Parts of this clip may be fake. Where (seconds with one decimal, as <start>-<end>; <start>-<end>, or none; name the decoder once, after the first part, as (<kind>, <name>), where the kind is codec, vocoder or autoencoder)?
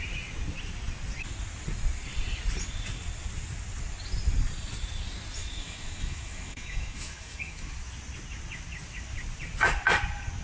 5.4-7.7 (autoencoder, DAC-VAE)